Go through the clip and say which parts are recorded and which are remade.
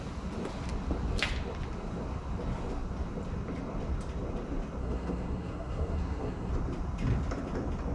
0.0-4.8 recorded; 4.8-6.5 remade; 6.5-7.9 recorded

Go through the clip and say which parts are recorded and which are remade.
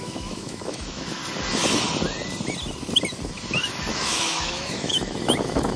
0.0-1.2 remade; 1.2-3.9 recorded; 3.9-5.8 remade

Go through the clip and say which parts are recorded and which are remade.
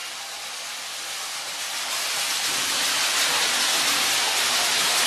0.0-5.1 recorded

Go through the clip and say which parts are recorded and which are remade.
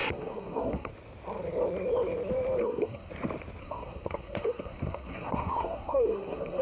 0.0-0.9 remade; 0.9-2.6 recorded; 2.6-3.1 remade; 3.1-3.6 recorded; 3.6-6.6 remade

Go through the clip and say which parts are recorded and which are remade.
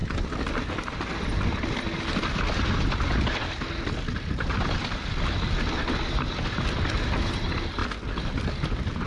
0.0-9.1 recorded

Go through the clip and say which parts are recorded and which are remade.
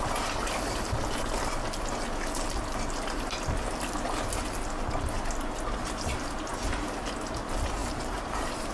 0.0-7.8 recorded; 7.8-8.7 remade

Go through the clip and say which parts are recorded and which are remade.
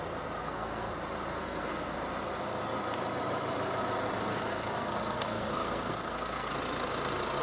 0.0-0.4 recorded; 0.4-0.9 remade; 0.9-1.3 recorded; 1.3-2.0 remade; 2.0-4.3 recorded; 4.3-6.5 remade; 6.5-7.4 recorded